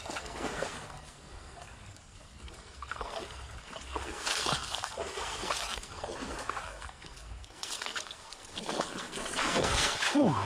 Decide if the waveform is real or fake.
fake